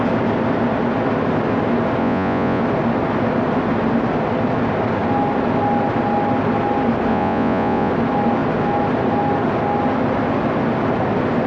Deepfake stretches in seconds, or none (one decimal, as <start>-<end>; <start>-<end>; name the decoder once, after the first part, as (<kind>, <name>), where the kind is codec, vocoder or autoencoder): 2.0-2.6 (vocoder, Vocos); 7.1-7.9